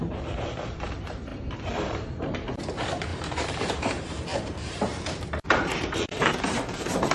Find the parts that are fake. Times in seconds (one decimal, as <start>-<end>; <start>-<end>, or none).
0.0-7.1